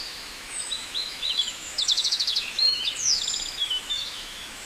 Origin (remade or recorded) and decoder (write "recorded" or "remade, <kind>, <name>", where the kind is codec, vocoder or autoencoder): remade, autoencoder, DAC-VAE